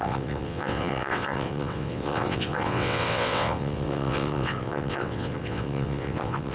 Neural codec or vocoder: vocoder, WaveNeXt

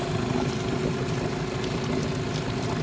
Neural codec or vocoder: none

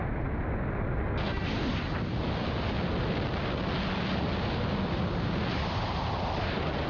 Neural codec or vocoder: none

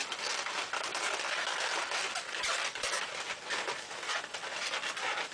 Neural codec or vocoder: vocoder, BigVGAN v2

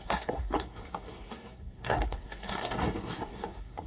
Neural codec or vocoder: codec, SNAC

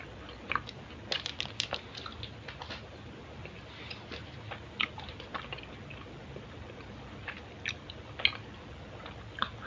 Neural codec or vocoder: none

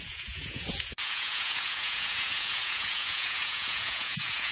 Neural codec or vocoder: vocoder, Vocos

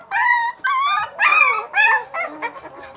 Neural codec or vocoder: none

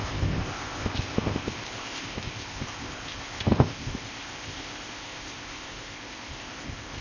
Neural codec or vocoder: codec, ZipCodec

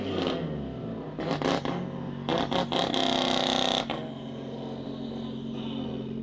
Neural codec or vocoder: none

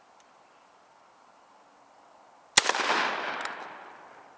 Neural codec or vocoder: none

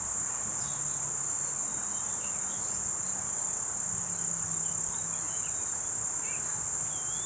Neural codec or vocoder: none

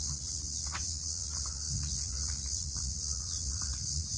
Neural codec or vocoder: vocoder, Vocos